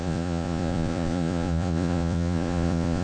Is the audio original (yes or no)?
no